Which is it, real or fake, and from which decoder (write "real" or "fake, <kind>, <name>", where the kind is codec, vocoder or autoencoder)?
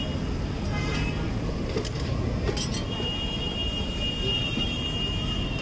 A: real